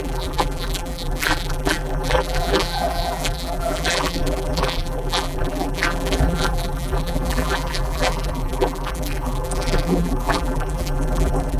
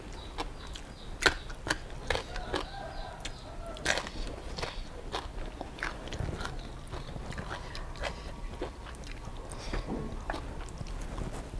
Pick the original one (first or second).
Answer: second